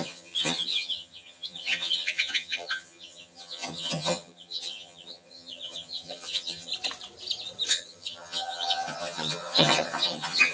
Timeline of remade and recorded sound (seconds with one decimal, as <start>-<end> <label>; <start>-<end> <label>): 0.0-6.7 remade; 6.7-7.7 recorded; 7.7-10.5 remade